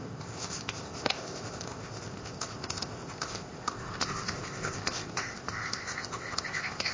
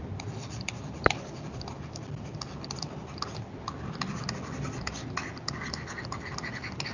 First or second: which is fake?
first